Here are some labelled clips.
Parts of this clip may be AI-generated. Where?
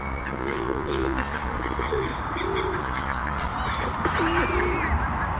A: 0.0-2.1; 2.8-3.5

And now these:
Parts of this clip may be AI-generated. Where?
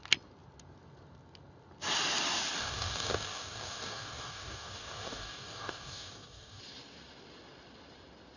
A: 2.6-6.6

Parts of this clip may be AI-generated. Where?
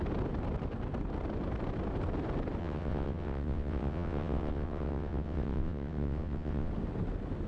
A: 2.6-6.7